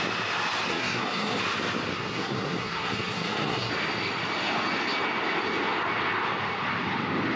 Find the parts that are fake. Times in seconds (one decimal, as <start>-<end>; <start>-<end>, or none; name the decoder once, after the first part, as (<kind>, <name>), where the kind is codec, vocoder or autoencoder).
0.7-1.4 (codec, SNAC); 1.9-3.7